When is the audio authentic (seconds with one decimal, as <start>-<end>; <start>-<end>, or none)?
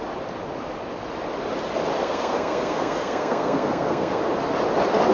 0.0-2.0; 4.2-5.1